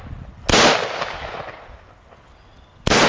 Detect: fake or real real